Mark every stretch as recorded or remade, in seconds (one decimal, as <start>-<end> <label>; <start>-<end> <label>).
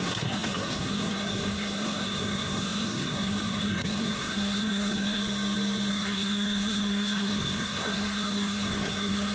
0.0-5.2 remade; 5.2-5.9 recorded; 5.9-9.3 remade